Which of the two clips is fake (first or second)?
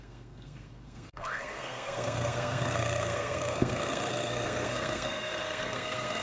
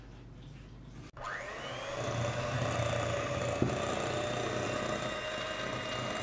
first